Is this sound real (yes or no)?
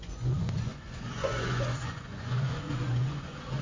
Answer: no